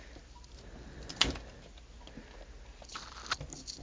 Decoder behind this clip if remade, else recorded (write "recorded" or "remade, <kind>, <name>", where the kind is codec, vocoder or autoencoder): recorded